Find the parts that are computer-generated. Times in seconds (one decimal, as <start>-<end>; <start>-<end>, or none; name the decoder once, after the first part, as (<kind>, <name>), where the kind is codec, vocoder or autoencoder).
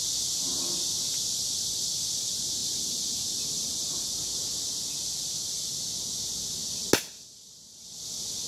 2.6-3.7 (vocoder, BigVGAN v2)